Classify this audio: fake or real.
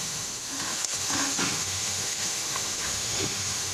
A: fake